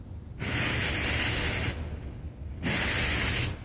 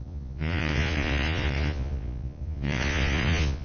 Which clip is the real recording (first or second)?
first